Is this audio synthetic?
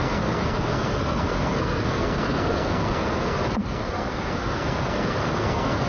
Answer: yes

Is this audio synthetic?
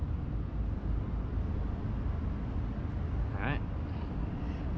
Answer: no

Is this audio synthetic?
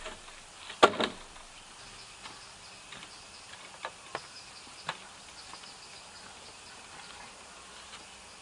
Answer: no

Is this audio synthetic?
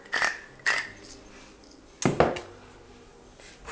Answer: no